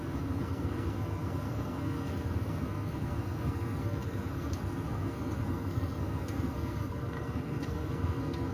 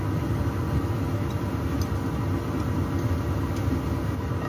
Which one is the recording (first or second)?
second